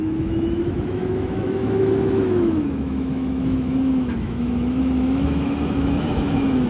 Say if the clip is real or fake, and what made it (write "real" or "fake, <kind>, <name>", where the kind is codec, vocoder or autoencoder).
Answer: fake, autoencoder, DAC-VAE